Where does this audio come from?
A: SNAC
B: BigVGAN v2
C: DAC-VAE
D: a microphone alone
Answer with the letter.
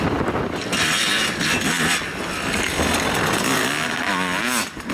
D